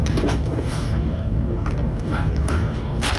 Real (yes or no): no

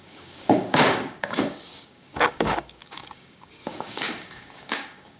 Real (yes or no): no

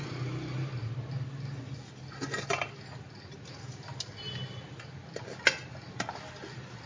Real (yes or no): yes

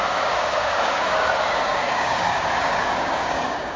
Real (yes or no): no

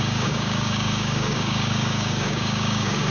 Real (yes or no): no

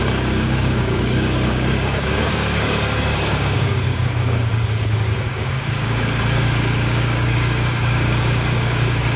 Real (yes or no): no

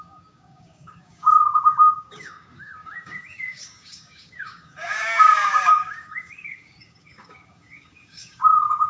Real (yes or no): no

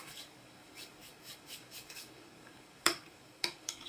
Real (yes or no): no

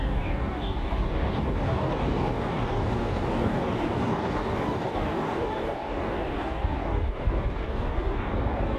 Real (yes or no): no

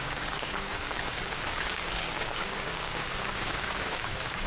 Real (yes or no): no